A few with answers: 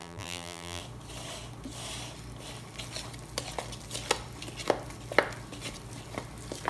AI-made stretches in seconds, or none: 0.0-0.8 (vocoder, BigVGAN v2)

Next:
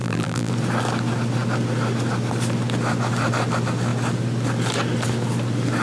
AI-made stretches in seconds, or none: 0.0-0.5 (vocoder, BigVGAN v2)

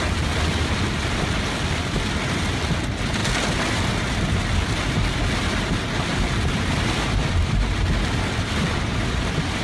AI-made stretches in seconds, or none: 0.0-9.6 (vocoder, BigVGAN v2)

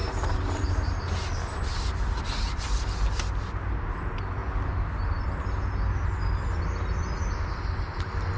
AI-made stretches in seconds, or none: 0.0-1.0 (vocoder, BigVGAN v2)